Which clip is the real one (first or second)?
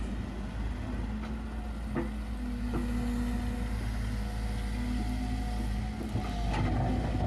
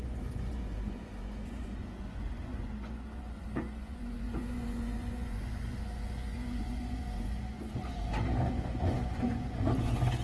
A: first